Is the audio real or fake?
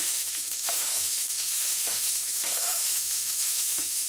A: fake